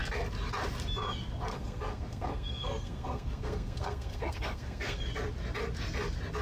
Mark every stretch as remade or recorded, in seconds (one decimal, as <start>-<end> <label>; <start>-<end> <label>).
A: 0.0-1.5 recorded; 1.5-5.0 remade; 5.0-6.4 recorded